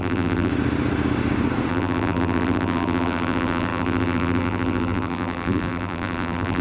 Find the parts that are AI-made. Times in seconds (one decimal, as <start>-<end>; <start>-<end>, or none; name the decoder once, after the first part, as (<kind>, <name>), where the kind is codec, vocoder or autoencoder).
0.0-0.5 (vocoder, BigVGAN v2); 1.7-6.6